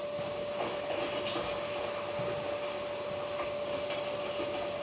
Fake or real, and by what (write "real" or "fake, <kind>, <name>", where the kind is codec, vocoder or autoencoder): real